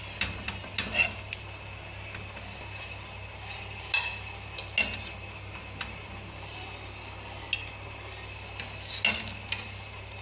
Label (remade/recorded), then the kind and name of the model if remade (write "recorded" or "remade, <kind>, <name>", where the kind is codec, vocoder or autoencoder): recorded